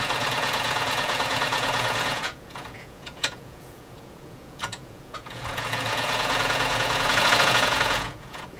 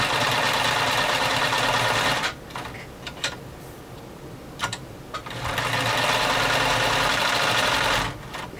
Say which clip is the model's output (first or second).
first